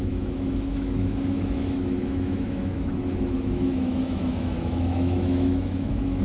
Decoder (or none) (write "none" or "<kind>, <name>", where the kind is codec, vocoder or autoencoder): autoencoder, DAC-VAE